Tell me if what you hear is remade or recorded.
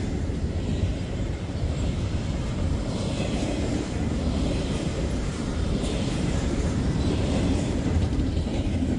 remade